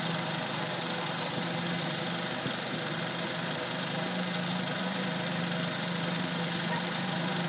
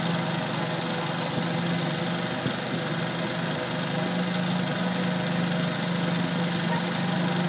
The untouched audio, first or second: second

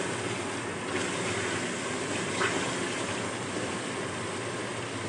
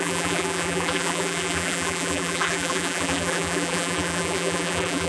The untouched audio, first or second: first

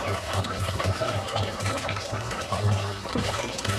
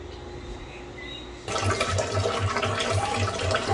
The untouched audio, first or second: second